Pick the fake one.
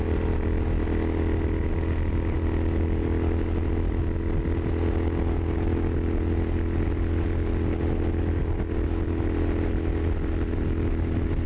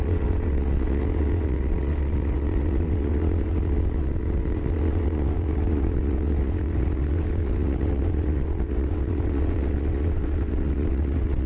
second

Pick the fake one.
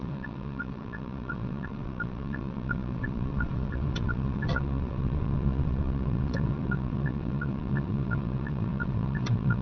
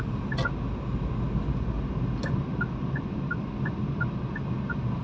first